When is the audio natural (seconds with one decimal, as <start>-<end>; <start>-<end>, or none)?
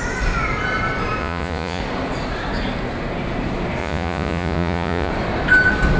0.0-1.2; 1.8-3.8; 5.1-6.0